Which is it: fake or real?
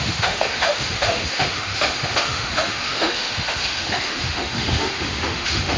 fake